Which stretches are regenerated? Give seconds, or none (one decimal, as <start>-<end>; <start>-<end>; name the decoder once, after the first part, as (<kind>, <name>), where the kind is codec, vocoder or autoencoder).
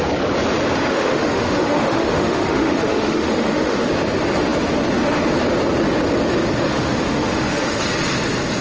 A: 0.9-3.9 (autoencoder, DAC-VAE); 6.7-7.8